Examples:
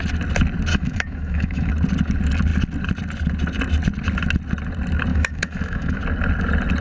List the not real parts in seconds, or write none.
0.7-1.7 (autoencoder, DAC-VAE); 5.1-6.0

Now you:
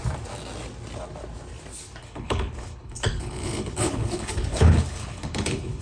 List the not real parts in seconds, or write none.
2.0-5.8 (codec, HILCodec)

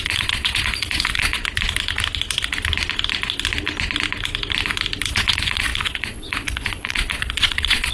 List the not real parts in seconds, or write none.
0.0-1.4 (vocoder, Vocos); 5.1-7.9

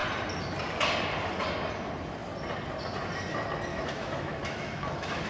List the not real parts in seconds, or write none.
3.7-5.3 (autoencoder, DAC-VAE)

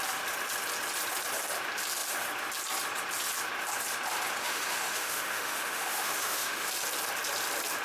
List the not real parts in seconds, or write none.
4.4-6.7 (autoencoder, DAC-VAE)